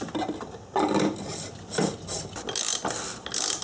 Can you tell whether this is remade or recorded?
recorded